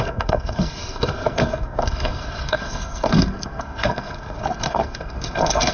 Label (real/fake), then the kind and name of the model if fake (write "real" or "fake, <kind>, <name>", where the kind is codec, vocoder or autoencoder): fake, codec, SNAC